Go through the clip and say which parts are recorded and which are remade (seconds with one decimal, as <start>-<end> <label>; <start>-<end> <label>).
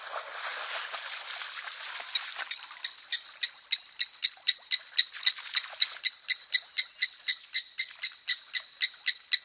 0.0-0.5 recorded; 0.5-3.7 remade; 3.7-4.2 recorded; 4.2-7.8 remade; 7.8-9.4 recorded